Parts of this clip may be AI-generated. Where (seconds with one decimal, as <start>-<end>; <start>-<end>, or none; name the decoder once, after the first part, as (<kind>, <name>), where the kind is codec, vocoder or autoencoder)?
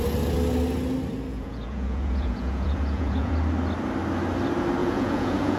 1.3-3.3 (vocoder, Vocos); 4.8-5.6